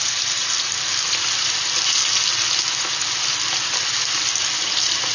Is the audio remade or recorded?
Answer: recorded